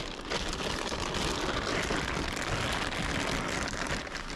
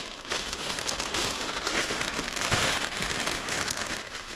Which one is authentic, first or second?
first